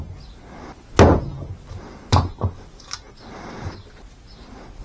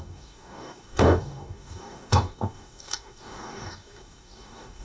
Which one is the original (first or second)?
first